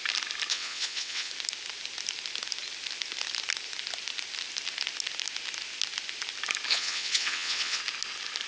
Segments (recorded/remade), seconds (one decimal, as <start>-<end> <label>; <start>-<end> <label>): 0.0-0.5 recorded; 0.5-1.3 remade; 1.3-6.7 recorded; 6.7-7.8 remade; 7.8-8.5 recorded